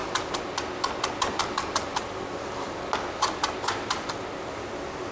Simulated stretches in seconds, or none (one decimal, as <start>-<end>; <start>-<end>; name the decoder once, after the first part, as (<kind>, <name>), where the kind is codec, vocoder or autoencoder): none